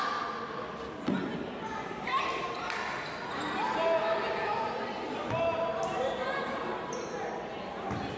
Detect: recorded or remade recorded